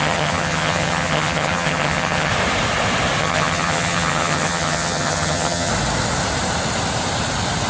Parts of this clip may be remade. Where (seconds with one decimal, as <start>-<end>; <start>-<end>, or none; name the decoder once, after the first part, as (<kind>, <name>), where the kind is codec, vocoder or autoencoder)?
0.0-2.3 (vocoder, HiFi-GAN); 3.2-5.7